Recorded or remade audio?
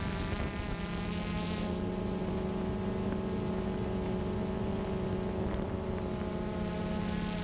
recorded